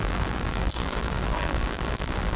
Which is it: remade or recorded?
remade